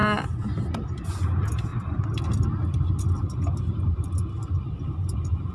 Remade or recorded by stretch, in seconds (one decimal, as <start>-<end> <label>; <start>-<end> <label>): 0.0-5.5 remade